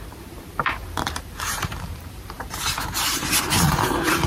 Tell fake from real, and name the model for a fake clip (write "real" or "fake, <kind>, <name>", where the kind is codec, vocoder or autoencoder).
fake, vocoder, BigVGAN v2